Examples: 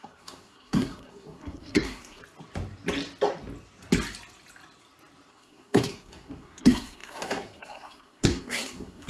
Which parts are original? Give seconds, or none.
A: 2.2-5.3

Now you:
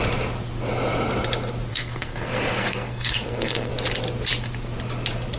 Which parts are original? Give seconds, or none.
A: 0.0-1.7; 3.7-5.4

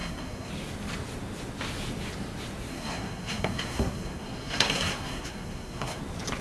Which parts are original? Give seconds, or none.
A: 0.5-2.7; 6.0-6.4